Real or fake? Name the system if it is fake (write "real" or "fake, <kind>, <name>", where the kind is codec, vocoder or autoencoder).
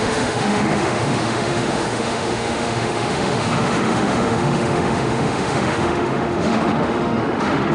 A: fake, autoencoder, DAC-VAE